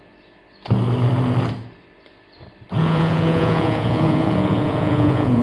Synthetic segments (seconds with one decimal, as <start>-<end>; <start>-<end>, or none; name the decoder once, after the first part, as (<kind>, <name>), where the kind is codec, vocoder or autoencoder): 2.8-5.4 (vocoder, Vocos)